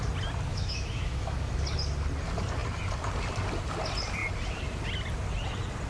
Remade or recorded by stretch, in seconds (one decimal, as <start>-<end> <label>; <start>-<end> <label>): 0.0-0.5 recorded; 0.5-1.5 remade; 1.5-5.9 recorded